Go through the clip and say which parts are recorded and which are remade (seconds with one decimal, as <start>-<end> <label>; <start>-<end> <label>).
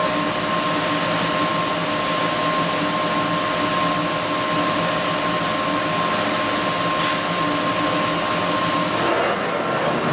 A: 0.0-10.1 recorded